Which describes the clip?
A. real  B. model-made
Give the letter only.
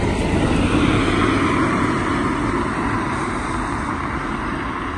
A